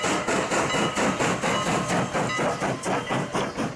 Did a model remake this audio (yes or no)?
no